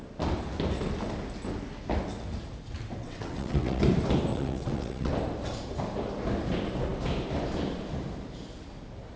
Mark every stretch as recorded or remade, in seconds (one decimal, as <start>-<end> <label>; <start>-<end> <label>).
0.0-3.0 recorded; 3.0-3.8 remade; 3.8-4.3 recorded; 4.3-5.1 remade; 5.1-9.2 recorded